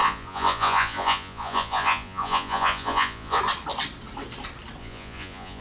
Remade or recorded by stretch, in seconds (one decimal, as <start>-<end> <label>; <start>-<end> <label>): 0.0-3.4 remade; 3.4-4.8 recorded; 4.8-5.6 remade